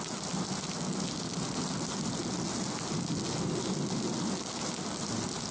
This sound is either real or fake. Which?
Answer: real